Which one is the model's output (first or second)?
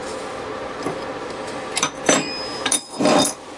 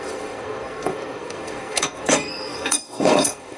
second